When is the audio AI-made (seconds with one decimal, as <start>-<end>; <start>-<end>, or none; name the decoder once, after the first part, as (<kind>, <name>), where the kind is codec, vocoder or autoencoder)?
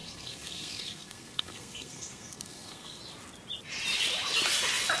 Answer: 0.0-3.0 (codec, SNAC)